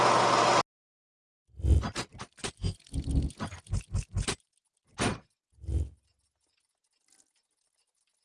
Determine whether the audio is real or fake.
real